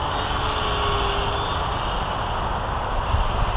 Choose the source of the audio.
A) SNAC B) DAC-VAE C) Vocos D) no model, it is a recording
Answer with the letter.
D